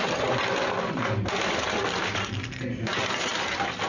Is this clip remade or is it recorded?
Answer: recorded